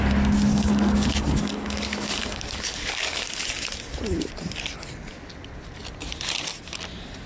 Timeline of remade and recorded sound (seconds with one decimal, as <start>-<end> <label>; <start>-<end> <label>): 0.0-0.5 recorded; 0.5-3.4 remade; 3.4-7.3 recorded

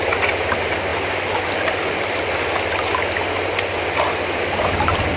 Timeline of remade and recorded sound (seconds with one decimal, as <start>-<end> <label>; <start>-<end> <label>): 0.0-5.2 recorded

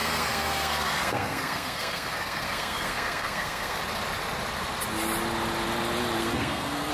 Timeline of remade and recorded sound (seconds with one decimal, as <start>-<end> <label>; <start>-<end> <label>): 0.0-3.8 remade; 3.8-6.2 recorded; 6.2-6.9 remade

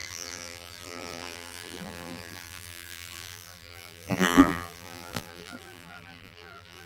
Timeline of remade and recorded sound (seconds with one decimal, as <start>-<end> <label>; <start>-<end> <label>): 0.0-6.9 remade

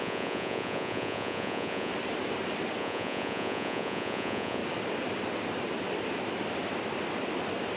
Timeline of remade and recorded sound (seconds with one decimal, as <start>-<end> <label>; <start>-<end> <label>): 0.0-1.9 remade; 1.9-2.8 recorded; 2.8-4.6 remade; 4.6-7.8 recorded